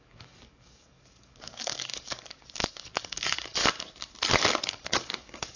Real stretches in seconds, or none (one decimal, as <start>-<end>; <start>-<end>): 3.6-4.6